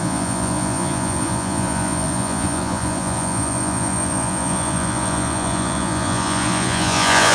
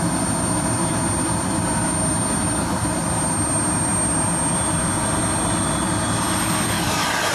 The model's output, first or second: first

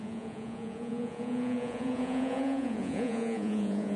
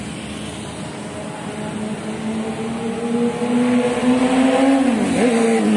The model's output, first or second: first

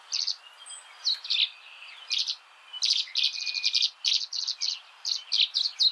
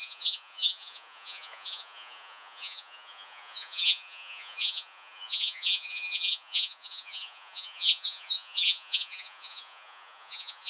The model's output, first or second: second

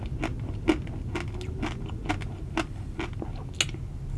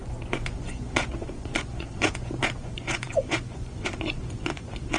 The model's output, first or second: second